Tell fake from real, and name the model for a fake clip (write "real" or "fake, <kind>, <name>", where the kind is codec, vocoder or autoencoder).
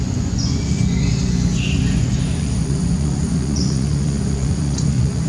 fake, vocoder, Vocos